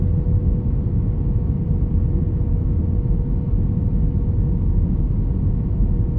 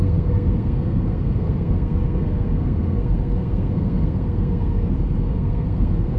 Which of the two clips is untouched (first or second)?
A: first